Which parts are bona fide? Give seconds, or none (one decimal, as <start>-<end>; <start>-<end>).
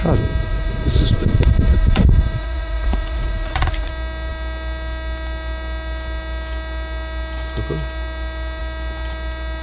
0.0-0.4; 3.9-9.6